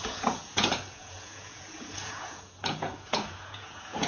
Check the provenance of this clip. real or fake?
fake